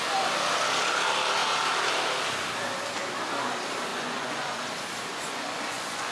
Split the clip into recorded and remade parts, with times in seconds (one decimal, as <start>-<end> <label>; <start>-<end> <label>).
0.0-3.9 recorded; 3.9-4.6 remade; 4.6-5.1 recorded; 5.1-6.1 remade